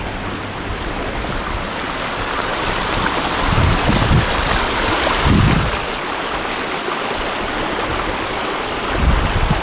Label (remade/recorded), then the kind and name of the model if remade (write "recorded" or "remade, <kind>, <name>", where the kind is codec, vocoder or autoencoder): recorded